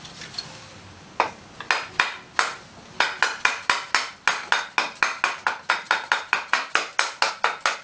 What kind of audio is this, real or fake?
real